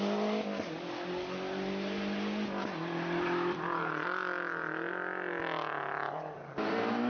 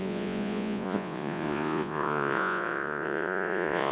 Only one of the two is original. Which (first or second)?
first